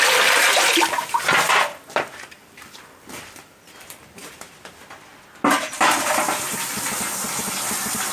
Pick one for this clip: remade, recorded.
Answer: recorded